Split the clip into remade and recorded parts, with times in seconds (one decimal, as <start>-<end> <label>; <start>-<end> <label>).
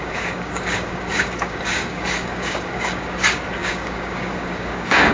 0.0-5.1 remade